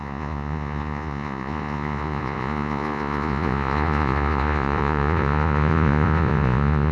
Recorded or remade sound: remade